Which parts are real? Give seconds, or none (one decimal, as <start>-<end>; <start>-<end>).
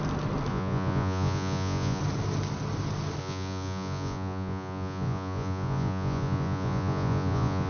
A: 0.0-0.5; 2.0-3.2